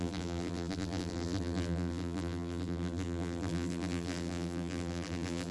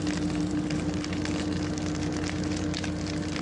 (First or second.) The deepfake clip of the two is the first